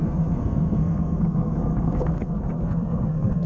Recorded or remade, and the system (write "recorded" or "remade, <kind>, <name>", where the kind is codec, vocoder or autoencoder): remade, codec, SNAC